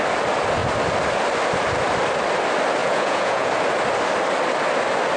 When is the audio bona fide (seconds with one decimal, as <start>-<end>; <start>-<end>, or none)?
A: 0.0-2.8; 3.5-5.2

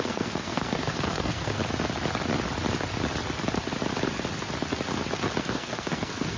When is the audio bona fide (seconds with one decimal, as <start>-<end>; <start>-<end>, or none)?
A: 1.6-5.4

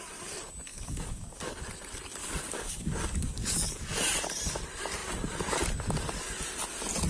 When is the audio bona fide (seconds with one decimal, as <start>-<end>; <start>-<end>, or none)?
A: 0.0-0.7; 1.6-2.2; 4.0-7.1

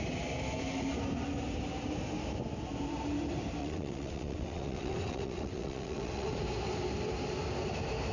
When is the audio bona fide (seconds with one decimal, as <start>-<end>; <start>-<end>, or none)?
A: 0.0-3.6; 6.3-8.1

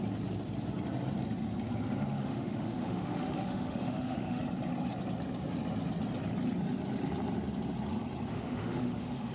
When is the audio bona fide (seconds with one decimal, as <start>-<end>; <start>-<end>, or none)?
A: 0.0-2.2; 4.4-8.3

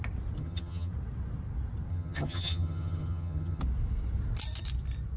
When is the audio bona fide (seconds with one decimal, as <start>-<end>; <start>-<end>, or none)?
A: 0.0-0.4; 0.9-1.9; 3.6-5.2

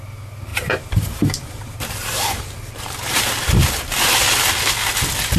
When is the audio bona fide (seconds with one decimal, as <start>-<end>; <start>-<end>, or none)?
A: 0.0-0.5; 3.7-5.4